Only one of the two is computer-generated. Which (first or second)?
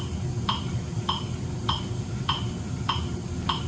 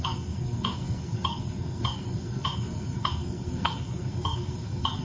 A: second